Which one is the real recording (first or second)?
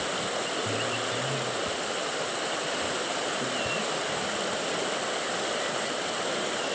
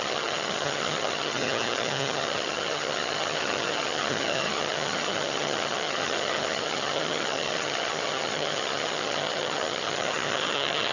first